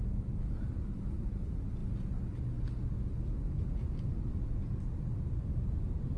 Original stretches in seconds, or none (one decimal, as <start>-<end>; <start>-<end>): 0.0-6.2